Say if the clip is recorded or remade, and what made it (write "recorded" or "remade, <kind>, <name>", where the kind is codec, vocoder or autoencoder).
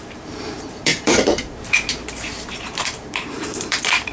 remade, vocoder, BigVGAN v2